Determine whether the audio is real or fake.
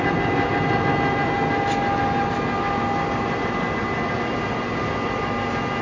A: real